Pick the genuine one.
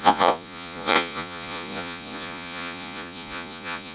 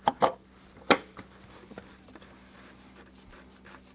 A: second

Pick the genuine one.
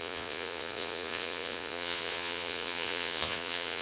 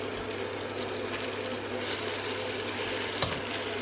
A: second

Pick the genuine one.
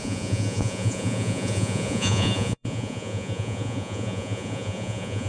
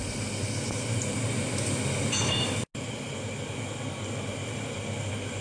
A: second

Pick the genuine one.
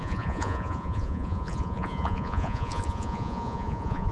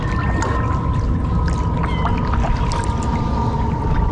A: second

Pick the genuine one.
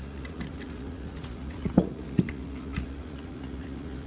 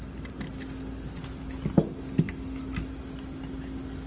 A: second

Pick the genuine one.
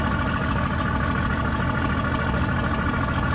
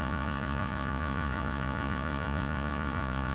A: first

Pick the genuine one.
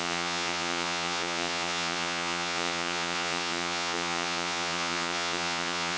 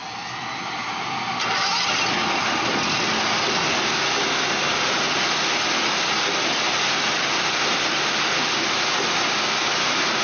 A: second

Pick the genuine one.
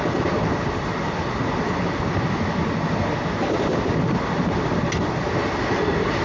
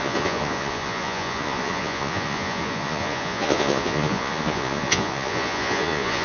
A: first